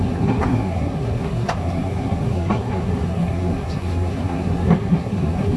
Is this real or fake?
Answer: fake